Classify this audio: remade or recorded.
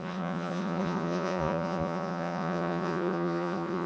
remade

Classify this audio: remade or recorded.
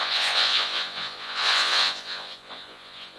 remade